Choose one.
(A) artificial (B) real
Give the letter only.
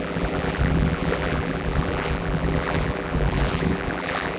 A